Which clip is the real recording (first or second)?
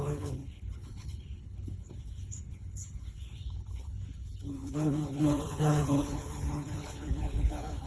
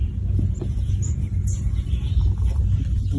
second